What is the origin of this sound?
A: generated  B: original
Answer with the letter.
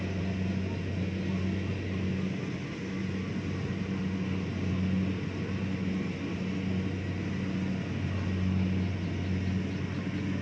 B